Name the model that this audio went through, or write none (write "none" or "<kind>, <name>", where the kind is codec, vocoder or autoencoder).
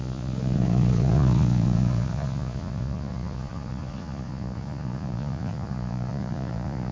vocoder, Vocos